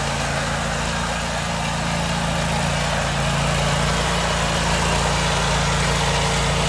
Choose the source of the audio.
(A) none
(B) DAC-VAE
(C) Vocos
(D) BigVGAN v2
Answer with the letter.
A